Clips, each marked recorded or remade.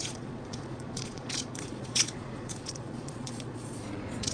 remade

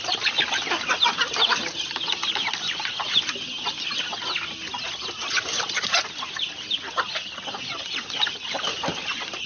recorded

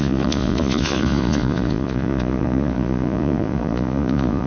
remade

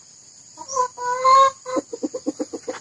recorded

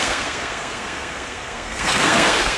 remade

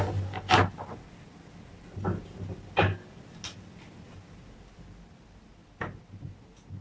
recorded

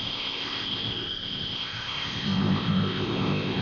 remade